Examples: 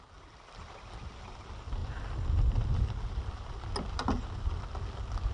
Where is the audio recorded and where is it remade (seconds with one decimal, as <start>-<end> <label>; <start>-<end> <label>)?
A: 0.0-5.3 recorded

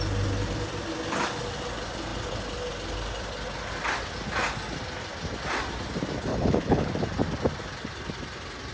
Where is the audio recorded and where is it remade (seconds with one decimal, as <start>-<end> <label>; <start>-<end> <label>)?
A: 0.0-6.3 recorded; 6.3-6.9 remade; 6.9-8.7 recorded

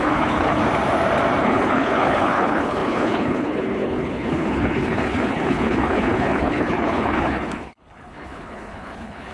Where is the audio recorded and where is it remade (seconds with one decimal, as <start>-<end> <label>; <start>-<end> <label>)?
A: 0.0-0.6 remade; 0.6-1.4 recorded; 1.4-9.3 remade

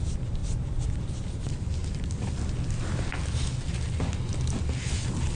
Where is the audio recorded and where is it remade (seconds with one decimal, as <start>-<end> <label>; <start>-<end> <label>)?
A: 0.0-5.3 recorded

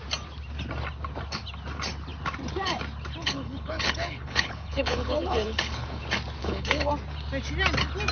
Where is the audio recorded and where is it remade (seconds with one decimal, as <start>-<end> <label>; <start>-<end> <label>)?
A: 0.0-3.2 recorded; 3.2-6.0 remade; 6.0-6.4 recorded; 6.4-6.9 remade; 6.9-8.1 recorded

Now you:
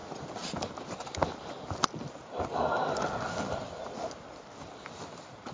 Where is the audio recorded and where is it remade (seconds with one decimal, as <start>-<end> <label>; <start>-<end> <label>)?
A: 0.0-5.5 recorded